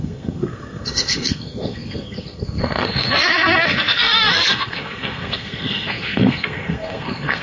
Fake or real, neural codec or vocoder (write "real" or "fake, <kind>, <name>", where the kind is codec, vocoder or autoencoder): fake, codec, SNAC